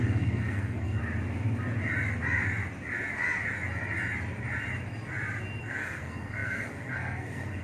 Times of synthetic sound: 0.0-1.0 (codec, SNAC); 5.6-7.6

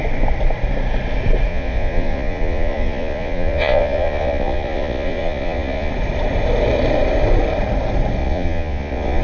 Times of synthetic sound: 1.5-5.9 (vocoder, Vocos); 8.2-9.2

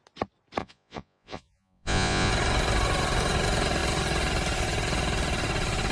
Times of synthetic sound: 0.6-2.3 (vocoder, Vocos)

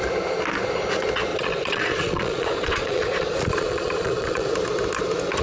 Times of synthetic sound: 1.3-4.5 (vocoder, Vocos)

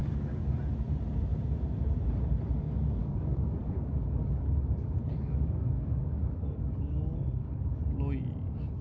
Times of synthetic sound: 0.0-0.6 (codec, DAC); 3.0-7.8

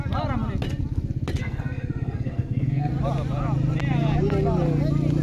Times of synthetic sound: 1.4-2.9 (codec, SNAC)

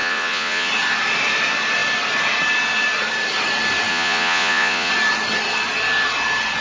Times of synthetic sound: 0.0-0.7 (vocoder, Vocos); 3.9-4.9

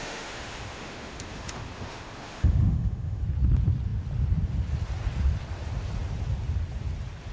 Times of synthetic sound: 0.0-3.2 (autoencoder, DAC-VAE)